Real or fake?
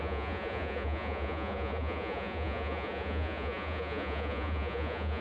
fake